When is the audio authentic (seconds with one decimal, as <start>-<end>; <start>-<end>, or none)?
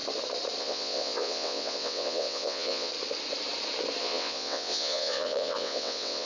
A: 0.0-0.6; 2.9-4.0